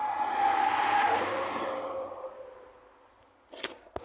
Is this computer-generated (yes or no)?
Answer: no